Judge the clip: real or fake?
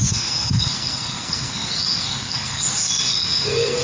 fake